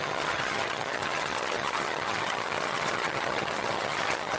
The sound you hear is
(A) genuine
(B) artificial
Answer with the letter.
B